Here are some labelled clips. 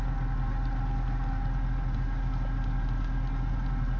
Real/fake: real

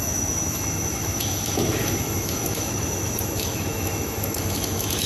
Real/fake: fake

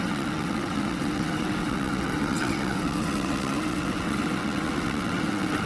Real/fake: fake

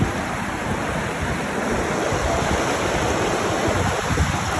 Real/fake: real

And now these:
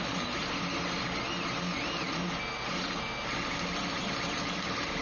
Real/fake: real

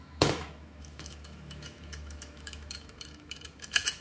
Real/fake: fake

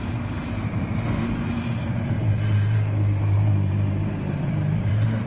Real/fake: fake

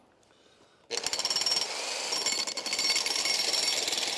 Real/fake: real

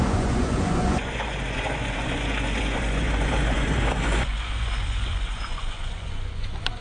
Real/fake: fake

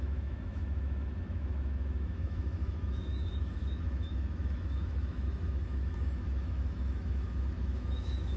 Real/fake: fake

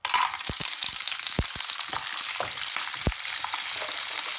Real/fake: real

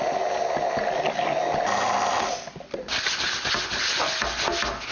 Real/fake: real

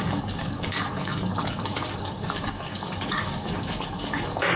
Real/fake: fake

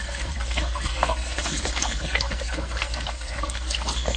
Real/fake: fake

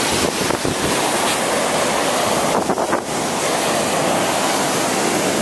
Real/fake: real